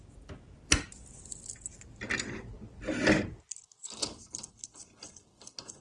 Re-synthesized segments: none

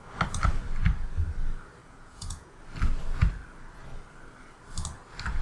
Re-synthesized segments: 1.8-2.6 (vocoder, Vocos)

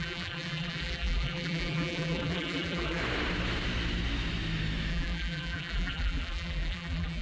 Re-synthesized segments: 0.0-3.0 (vocoder, BigVGAN v2); 4.9-7.2

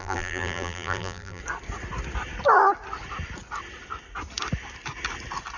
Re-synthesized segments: 0.0-1.4 (vocoder, BigVGAN v2)

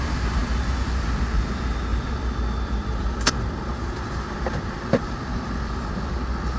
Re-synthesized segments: 1.9-5.9 (vocoder, BigVGAN v2)

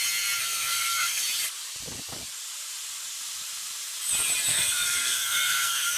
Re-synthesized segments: 0.4-1.2 (codec, SNAC); 4.5-6.0